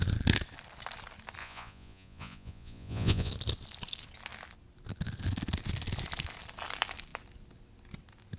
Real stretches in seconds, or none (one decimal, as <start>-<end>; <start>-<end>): 0.0-1.4; 3.3-8.4